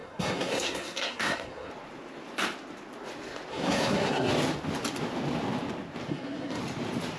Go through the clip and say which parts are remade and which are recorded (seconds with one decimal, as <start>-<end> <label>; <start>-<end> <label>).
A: 0.0-1.7 remade; 1.7-3.5 recorded; 3.5-4.3 remade; 4.3-6.1 recorded; 6.1-6.6 remade; 6.6-7.2 recorded